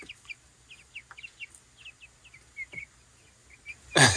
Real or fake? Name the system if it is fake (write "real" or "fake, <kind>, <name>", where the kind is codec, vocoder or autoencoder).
real